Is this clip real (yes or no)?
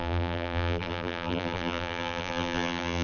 no